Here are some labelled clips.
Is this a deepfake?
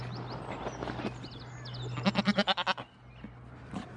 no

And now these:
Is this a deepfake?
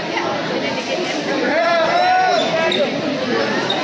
no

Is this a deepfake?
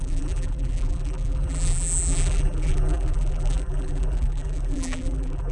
yes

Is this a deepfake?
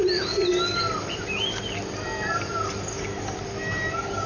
no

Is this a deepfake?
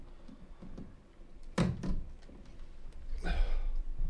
no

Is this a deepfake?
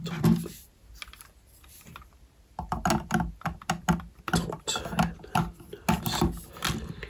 no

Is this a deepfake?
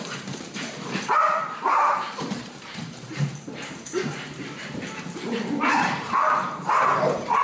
yes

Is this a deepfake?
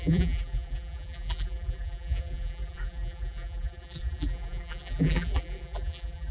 yes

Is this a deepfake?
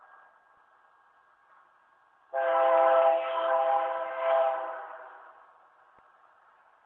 no